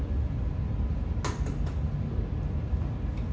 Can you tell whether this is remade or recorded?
recorded